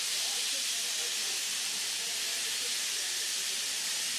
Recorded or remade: remade